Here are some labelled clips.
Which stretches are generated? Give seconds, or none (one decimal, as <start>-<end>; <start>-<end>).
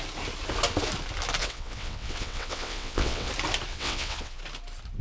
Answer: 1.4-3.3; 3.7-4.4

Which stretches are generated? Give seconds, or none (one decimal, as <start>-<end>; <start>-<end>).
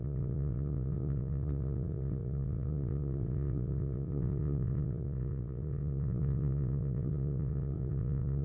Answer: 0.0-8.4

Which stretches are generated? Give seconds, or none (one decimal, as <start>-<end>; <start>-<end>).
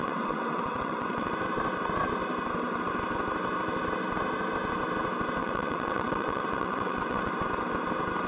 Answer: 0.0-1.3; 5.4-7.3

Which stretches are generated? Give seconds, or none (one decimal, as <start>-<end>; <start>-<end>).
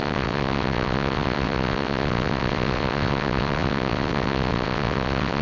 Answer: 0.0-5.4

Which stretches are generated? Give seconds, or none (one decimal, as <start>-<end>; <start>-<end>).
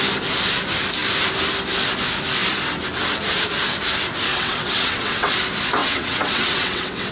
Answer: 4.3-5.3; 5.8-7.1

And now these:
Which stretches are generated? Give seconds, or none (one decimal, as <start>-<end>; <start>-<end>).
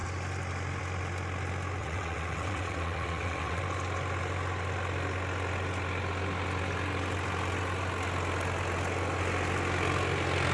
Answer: 1.8-3.6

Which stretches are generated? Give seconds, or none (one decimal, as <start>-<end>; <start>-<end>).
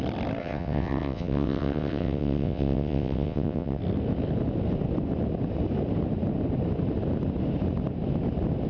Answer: 0.4-3.8